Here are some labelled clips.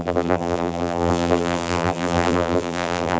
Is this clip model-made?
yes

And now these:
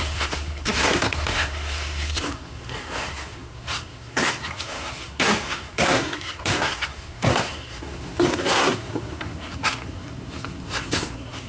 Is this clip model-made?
yes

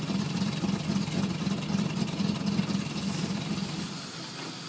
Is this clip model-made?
no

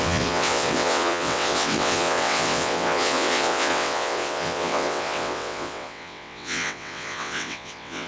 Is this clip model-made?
yes